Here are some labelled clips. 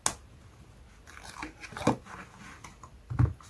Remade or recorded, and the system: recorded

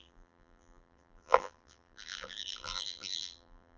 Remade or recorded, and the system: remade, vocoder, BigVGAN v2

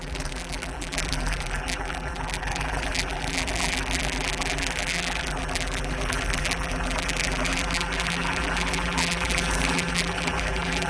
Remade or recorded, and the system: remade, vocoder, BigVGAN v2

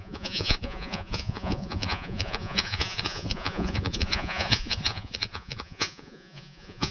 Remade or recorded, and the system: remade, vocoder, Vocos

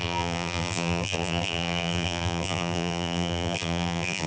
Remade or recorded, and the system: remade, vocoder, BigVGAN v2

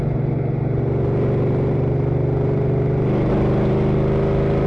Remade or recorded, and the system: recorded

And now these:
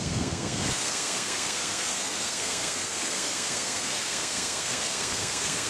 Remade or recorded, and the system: remade, codec, SNAC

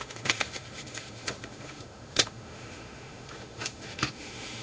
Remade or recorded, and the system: remade, autoencoder, DAC-VAE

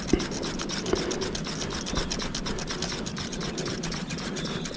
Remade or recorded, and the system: recorded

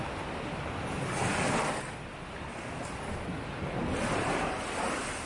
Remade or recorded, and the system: recorded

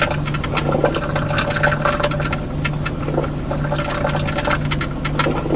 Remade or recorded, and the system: recorded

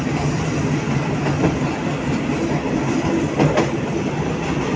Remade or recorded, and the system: recorded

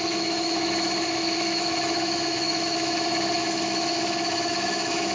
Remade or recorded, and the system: remade, autoencoder, DAC-VAE